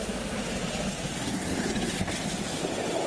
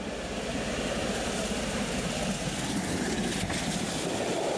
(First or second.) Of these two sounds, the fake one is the second